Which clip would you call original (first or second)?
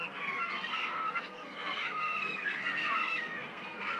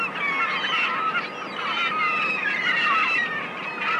second